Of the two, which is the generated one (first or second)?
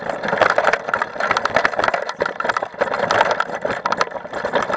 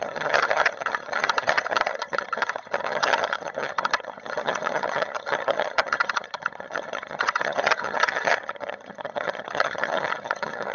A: second